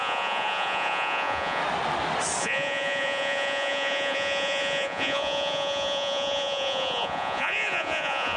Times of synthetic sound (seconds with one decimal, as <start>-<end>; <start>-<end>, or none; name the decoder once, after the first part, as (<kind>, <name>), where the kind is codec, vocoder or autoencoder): 0.0-1.6 (vocoder, Vocos); 2.4-8.4